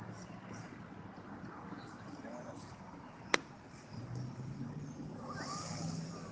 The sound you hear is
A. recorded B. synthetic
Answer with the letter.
A